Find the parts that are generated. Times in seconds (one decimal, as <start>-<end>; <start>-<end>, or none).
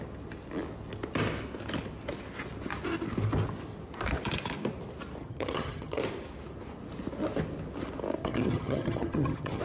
5.2-6.0; 8.2-9.6